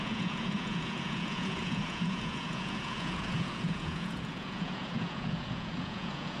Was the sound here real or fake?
fake